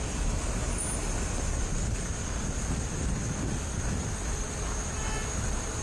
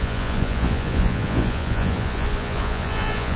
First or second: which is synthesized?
second